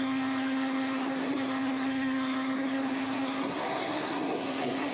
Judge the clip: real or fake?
fake